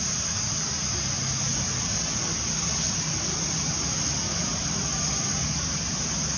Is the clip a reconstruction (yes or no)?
no